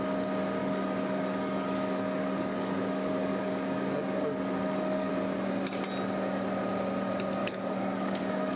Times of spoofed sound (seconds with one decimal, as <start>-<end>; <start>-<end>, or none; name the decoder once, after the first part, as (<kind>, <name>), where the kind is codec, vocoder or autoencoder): 0.6-5.1 (codec, DAC); 7.4-8.6